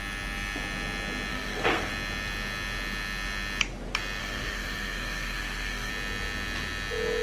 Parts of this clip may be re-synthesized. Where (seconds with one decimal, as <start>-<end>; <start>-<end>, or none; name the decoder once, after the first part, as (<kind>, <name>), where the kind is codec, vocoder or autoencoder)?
1.3-1.9 (codec, SNAC); 4.2-5.9